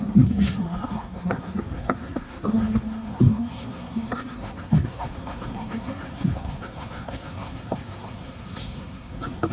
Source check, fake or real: fake